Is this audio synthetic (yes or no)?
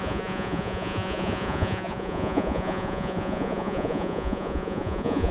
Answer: yes